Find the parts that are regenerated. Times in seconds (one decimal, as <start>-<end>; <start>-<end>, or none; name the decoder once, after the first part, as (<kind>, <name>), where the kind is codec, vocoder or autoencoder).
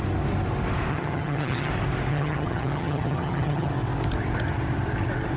0.9-1.7 (vocoder, HiFi-GAN); 2.1-3.7